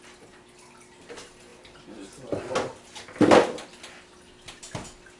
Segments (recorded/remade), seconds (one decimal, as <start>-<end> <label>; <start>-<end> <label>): 0.0-5.2 recorded